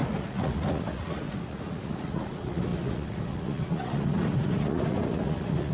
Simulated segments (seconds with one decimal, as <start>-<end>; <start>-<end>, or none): 0.0-5.7